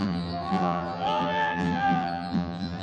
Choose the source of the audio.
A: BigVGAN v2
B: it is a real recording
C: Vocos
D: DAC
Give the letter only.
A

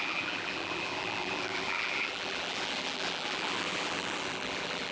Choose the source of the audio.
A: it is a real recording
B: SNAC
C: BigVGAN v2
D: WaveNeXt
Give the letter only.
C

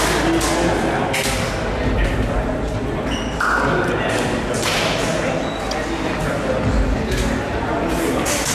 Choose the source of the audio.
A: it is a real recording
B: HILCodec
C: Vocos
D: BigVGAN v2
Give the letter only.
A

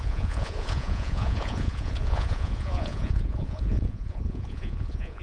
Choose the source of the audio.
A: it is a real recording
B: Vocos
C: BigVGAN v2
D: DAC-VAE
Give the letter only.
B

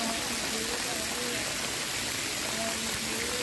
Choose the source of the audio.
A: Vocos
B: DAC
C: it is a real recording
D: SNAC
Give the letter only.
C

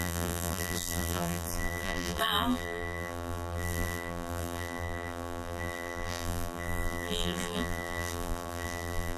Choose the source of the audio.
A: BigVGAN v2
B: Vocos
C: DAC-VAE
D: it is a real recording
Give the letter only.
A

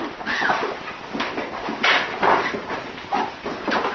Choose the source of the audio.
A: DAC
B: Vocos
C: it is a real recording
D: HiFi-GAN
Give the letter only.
C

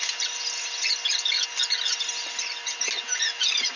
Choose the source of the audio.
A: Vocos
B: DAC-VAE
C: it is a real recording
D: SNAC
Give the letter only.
C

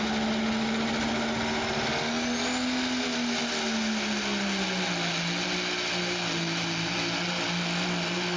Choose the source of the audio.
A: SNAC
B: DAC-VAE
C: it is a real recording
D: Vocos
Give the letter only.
C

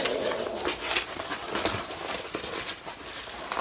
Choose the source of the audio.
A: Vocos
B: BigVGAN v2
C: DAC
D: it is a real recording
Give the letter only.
D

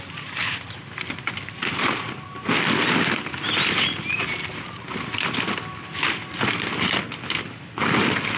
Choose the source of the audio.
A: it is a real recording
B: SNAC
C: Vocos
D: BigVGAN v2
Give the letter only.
A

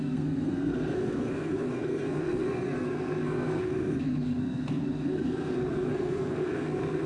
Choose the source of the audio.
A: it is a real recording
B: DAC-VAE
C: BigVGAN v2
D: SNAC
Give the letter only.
D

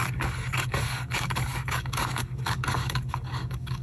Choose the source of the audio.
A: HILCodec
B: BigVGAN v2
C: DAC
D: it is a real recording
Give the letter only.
C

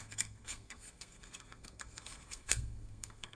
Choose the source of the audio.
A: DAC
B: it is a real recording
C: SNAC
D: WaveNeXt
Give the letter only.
C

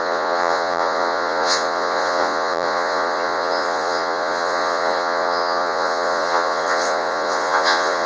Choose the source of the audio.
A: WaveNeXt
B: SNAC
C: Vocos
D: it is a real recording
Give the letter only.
C